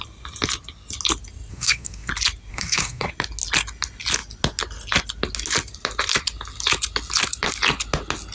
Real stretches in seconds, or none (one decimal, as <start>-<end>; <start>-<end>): 0.0-1.5; 2.1-2.5; 3.1-8.3